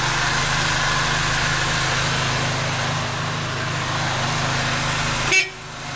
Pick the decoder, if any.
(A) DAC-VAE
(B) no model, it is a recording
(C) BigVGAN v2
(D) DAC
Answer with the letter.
B